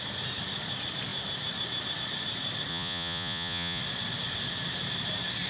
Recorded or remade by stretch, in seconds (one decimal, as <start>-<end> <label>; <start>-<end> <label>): 0.0-2.7 recorded; 2.7-3.8 remade; 3.8-5.5 recorded